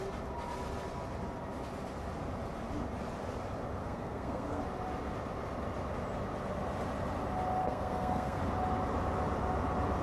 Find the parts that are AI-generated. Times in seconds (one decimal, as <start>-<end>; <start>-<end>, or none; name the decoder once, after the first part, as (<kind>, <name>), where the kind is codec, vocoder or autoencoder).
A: 3.8-4.6 (codec, SNAC); 7.6-8.4